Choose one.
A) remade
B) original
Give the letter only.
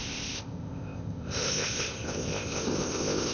A